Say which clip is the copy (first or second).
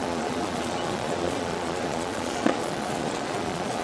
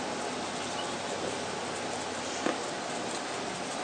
first